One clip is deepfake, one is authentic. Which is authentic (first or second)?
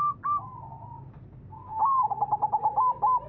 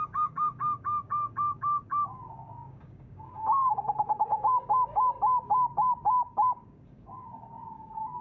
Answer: first